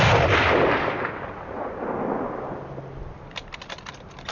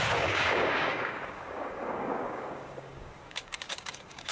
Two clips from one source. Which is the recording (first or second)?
first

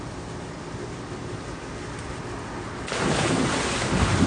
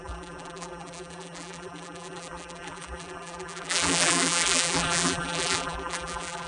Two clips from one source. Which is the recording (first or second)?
first